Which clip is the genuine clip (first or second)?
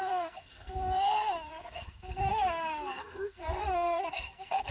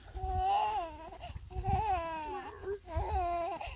second